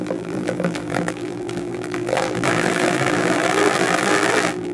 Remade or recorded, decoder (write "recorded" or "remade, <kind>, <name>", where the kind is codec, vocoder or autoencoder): remade, vocoder, BigVGAN v2